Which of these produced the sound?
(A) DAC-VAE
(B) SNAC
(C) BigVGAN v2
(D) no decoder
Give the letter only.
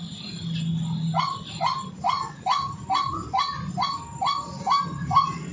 D